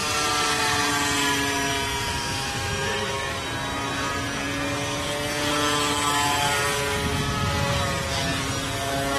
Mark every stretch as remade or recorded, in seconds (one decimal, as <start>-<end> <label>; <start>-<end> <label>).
0.0-2.1 recorded; 2.1-3.4 remade; 3.4-9.2 recorded